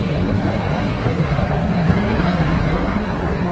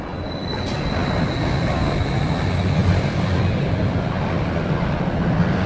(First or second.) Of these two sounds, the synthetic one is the first